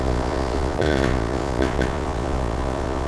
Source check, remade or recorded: remade